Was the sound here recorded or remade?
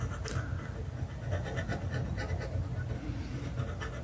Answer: recorded